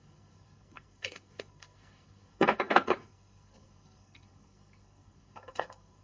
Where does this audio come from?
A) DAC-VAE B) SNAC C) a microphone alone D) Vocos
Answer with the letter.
B